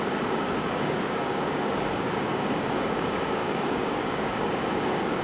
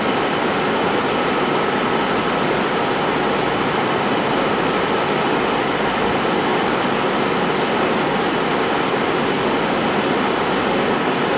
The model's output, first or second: first